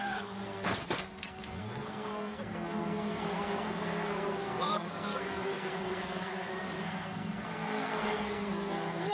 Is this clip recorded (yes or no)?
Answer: no